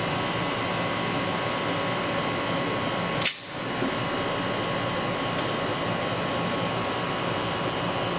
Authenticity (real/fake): real